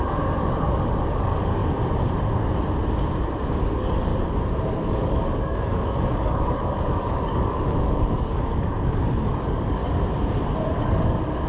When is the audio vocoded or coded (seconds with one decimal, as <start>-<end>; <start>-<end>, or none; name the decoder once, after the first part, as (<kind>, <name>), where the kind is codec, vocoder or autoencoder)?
0.0-1.6 (codec, DAC); 3.6-4.1; 4.7-9.8; 10.8-11.5